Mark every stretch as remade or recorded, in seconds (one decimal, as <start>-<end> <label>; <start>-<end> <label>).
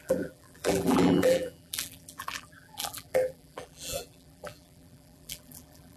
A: 0.0-6.0 remade